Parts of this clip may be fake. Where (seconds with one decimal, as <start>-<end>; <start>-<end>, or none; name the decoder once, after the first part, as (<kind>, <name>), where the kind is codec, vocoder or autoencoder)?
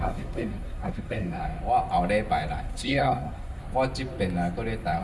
0.0-1.4 (codec, SNAC); 2.6-3.6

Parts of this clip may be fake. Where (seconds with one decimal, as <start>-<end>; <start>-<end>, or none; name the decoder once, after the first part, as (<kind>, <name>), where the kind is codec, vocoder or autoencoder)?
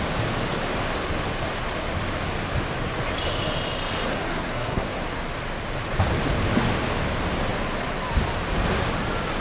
4.1-5.2 (codec, SNAC)